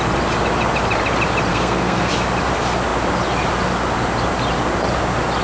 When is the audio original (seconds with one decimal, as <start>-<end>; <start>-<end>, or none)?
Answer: 0.0-1.5; 2.1-5.4